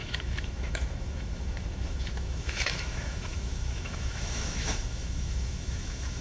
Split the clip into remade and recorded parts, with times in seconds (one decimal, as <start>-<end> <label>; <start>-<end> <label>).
0.0-6.2 remade